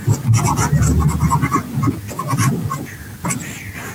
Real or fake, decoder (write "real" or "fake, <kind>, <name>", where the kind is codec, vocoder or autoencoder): real